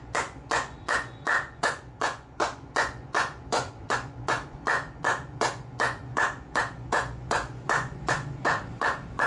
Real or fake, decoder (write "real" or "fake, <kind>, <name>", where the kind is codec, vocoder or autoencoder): fake, vocoder, Vocos